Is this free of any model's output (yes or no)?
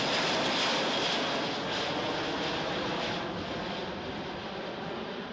yes